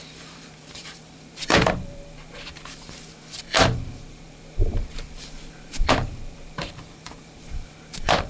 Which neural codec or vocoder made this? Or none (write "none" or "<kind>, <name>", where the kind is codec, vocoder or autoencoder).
vocoder, BigVGAN v2